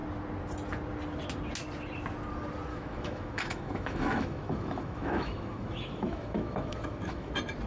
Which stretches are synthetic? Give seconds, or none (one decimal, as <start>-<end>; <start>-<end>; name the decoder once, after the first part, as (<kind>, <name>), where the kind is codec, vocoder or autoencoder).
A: 2.7-7.3 (autoencoder, DAC-VAE)